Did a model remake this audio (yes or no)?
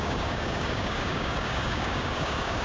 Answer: yes